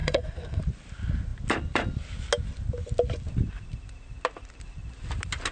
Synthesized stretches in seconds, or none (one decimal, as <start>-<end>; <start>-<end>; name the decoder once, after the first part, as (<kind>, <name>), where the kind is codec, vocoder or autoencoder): 0.0-0.6 (codec, SNAC)